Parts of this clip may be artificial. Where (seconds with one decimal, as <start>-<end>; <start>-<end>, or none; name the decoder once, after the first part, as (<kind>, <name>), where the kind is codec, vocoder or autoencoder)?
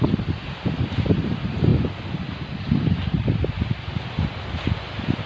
none